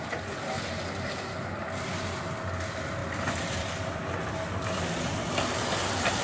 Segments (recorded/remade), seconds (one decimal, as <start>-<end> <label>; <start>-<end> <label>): 0.0-6.2 recorded

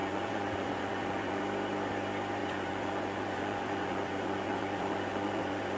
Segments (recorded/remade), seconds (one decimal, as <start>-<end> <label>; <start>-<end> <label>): 0.0-1.4 remade; 1.4-2.4 recorded; 2.4-5.8 remade

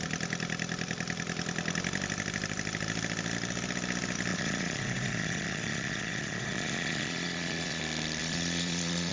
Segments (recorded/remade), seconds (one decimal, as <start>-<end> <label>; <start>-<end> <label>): 0.0-4.3 recorded; 4.3-7.8 remade; 7.8-8.2 recorded; 8.2-9.1 remade

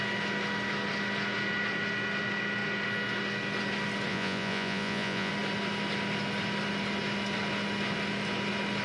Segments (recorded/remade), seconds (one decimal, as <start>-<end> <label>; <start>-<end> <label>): 0.0-4.1 recorded; 4.1-5.3 remade; 5.3-8.8 recorded

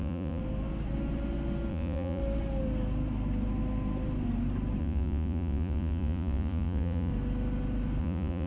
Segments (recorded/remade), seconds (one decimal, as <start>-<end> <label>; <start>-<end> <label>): 0.0-0.4 remade; 0.4-1.7 recorded; 1.7-2.2 remade; 2.2-4.8 recorded; 4.8-7.1 remade; 7.1-8.0 recorded; 8.0-8.5 remade

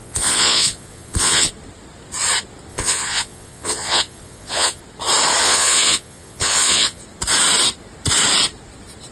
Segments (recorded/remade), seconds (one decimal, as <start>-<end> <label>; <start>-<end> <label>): 0.0-1.5 remade; 1.5-2.7 recorded; 2.7-4.8 remade; 4.8-5.4 recorded; 5.4-7.0 remade; 7.0-9.1 recorded

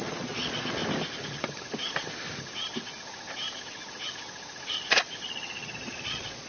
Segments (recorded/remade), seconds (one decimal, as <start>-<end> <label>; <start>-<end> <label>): 0.0-0.8 remade; 0.8-4.7 recorded; 4.7-6.5 remade

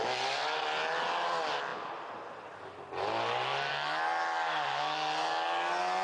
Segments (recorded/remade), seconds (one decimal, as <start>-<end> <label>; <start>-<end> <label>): 0.0-6.0 recorded